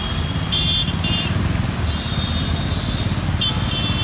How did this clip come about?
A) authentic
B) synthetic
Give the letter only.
A